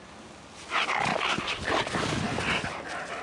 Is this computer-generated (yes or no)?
no